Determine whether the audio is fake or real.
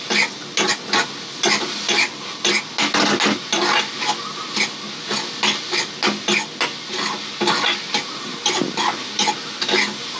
real